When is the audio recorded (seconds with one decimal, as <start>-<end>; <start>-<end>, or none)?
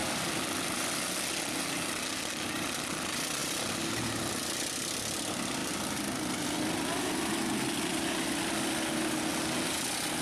0.0-10.2